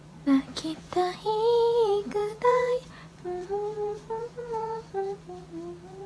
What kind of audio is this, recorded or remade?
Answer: remade